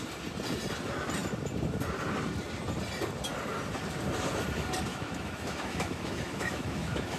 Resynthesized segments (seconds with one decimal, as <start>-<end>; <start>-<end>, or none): 4.9-7.2